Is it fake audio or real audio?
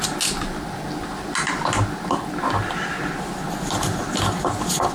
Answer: real